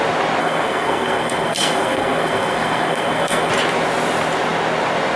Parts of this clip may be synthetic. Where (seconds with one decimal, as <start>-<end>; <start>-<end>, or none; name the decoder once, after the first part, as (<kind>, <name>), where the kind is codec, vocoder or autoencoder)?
0.4-3.5 (codec, SNAC)